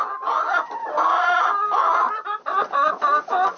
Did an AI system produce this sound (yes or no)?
no